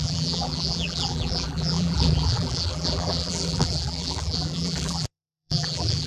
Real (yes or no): no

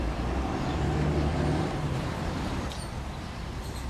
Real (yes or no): no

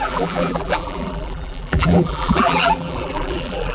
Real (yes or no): no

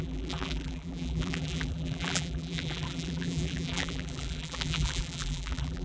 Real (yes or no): no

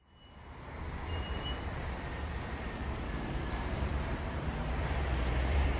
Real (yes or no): no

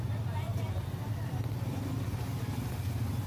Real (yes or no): yes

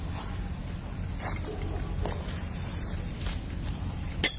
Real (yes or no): yes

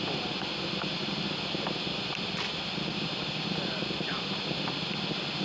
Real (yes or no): yes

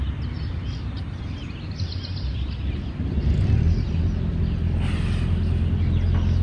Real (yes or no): yes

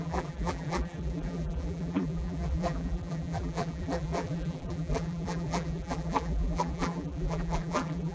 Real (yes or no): no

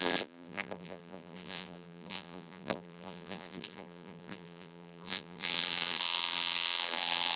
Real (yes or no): no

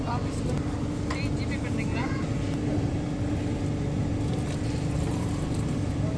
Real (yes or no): yes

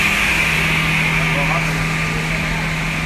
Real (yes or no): yes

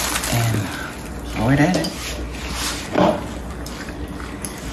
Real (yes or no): yes